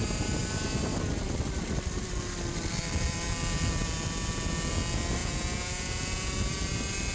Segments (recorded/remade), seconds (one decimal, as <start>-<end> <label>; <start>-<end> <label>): 0.0-5.2 recorded; 5.2-6.3 remade; 6.3-7.1 recorded